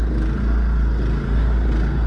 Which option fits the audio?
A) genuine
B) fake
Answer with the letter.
A